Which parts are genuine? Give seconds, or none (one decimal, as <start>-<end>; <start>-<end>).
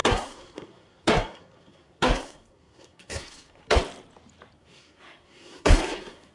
3.8-4.6